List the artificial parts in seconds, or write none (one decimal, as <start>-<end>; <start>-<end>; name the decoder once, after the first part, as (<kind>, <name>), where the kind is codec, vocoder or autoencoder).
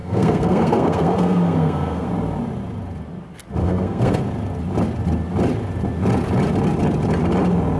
0.0-2.1 (codec, SNAC); 3.6-4.2